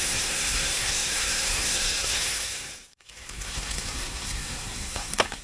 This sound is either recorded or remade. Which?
remade